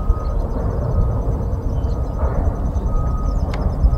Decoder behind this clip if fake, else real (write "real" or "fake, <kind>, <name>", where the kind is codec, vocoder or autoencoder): real